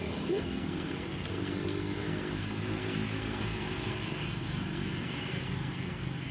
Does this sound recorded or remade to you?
remade